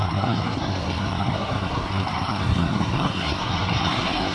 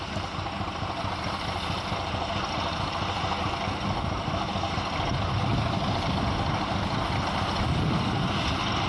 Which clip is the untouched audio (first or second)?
second